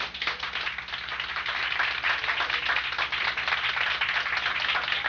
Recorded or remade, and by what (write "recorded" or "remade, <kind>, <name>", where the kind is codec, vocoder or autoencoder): recorded